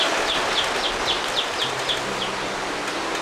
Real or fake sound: real